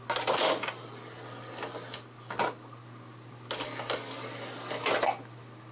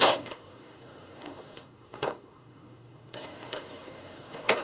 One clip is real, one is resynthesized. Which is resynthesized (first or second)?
second